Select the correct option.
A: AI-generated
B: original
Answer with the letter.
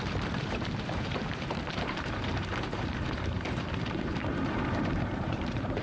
A